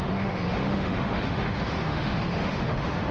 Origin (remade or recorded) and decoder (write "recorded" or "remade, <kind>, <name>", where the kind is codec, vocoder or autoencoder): remade, autoencoder, DAC-VAE